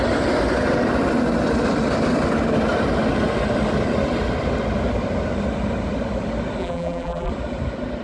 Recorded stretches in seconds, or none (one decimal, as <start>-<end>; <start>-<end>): 0.0-6.6; 7.3-8.0